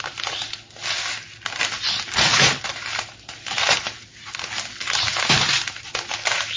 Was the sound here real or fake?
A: real